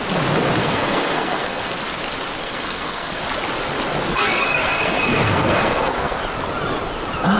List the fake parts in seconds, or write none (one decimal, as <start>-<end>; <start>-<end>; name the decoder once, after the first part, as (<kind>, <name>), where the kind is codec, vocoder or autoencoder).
0.6-1.7 (codec, SNAC); 2.4-3.2; 4.1-6.2

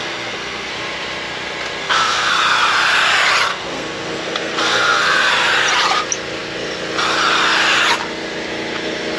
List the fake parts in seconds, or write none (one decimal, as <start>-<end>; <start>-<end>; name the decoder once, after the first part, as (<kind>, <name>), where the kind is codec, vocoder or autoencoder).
0.0-0.7 (codec, SNAC); 1.8-2.3; 3.5-5.3

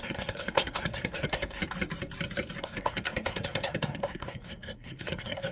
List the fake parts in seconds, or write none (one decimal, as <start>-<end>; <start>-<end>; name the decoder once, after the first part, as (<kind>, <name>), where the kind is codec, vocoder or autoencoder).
0.0-1.6 (codec, SNAC); 2.6-5.5

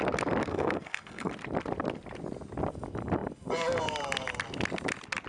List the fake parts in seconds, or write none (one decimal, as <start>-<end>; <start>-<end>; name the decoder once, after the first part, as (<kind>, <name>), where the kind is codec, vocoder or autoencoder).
0.5-1.3 (codec, SNAC)

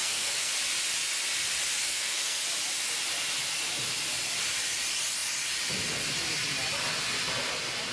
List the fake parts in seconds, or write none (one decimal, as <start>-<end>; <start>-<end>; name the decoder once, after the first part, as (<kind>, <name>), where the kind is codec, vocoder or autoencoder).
0.0-0.5 (codec, SNAC); 1.8-2.4

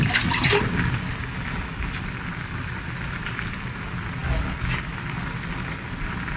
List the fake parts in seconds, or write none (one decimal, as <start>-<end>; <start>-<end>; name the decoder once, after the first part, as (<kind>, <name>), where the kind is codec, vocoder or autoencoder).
none

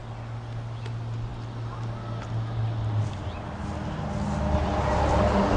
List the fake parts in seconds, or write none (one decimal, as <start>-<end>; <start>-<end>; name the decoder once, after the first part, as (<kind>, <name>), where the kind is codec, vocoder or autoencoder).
none